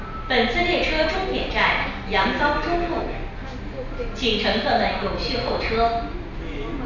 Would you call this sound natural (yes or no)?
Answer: yes